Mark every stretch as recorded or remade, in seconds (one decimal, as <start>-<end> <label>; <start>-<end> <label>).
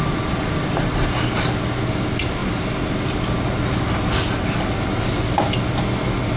0.0-6.4 recorded